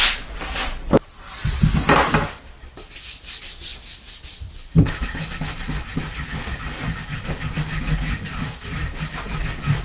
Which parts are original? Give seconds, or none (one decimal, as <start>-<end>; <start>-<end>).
0.0-9.8

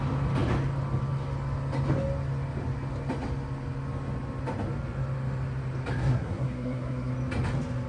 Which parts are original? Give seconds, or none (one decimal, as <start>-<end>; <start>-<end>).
0.0-6.0; 7.1-7.9

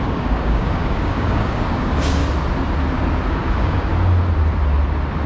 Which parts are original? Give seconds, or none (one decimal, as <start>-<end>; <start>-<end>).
2.2-3.3; 3.9-5.3

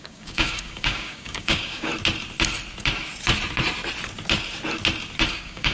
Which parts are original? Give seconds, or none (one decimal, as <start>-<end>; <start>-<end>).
1.9-5.3

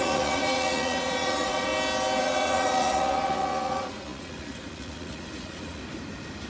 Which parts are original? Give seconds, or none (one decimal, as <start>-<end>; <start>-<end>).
1.7-2.2; 5.8-6.5

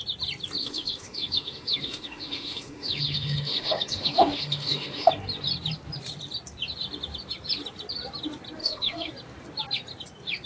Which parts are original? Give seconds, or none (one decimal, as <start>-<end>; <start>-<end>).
0.0-0.6; 5.1-8.6; 9.1-10.5

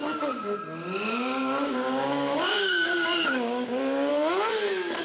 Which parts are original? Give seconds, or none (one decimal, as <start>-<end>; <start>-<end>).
0.0-1.1; 4.1-5.0

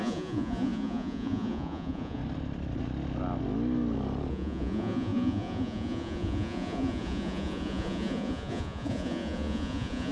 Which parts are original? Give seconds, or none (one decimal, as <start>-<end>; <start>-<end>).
2.2-4.3